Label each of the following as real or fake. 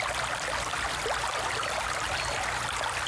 real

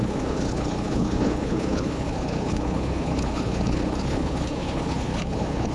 fake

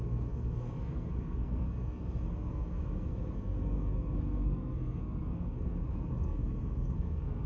fake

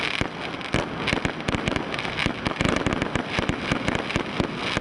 real